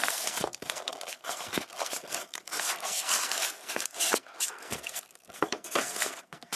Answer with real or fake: fake